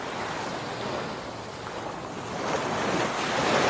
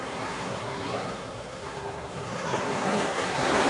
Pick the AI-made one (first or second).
second